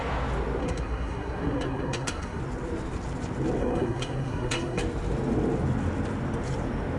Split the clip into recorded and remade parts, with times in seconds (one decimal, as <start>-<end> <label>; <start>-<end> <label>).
0.0-0.6 recorded; 0.6-2.4 remade; 2.4-3.6 recorded; 3.6-4.8 remade; 4.8-7.0 recorded